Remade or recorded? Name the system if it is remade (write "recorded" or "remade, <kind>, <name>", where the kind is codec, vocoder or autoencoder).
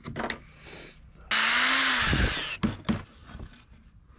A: recorded